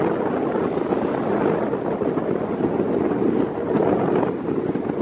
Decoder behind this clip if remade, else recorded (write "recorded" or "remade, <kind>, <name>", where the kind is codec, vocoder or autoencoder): recorded